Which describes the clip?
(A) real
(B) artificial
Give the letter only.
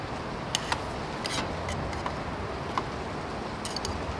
A